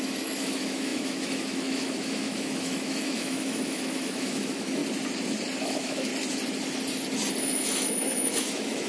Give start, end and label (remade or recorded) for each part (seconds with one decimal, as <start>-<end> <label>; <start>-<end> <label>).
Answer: 0.0-4.8 remade; 4.8-5.6 recorded; 5.6-6.1 remade; 6.1-7.4 recorded; 7.4-8.9 remade